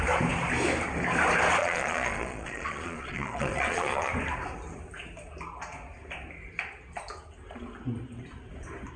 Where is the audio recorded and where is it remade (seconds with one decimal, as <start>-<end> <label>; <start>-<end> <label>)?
0.0-1.6 recorded; 1.6-4.1 remade; 4.1-9.0 recorded